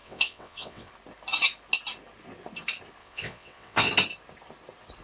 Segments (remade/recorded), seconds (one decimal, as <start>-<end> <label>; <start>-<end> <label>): 0.0-0.9 remade; 0.9-3.0 recorded; 3.0-3.9 remade; 3.9-5.0 recorded